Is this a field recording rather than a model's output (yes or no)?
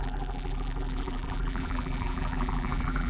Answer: no